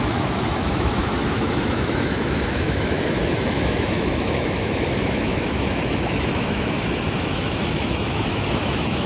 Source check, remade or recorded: remade